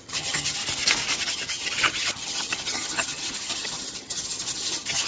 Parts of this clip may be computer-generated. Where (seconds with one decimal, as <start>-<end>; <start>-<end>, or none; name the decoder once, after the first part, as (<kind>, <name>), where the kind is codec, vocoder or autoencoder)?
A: 0.0-0.6 (vocoder, HiFi-GAN); 1.2-5.1